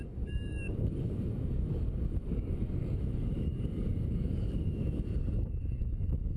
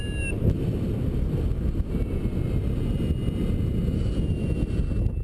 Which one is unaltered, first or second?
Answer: second